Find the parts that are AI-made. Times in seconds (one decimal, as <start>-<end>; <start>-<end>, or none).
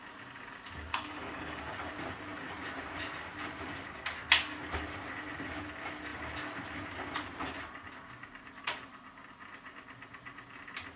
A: 0.9-1.6